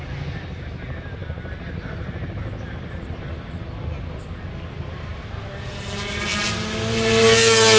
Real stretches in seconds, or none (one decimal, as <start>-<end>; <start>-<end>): 0.0-7.8